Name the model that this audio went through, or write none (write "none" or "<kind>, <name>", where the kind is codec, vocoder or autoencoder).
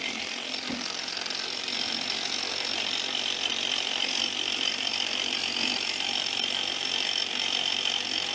none